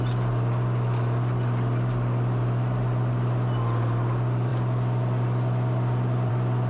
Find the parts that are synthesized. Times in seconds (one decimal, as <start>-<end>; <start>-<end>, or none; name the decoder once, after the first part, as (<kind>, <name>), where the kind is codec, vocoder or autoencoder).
none